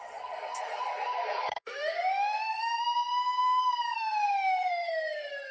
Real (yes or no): no